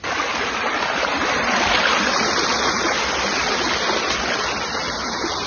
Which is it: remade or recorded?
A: recorded